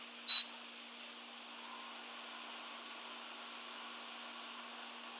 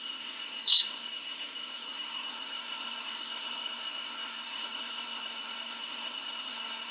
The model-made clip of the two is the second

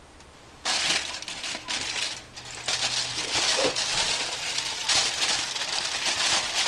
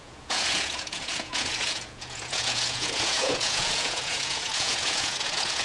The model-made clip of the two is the second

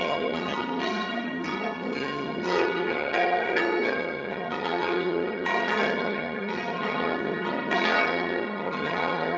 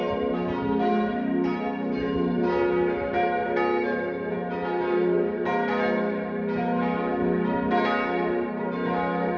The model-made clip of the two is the first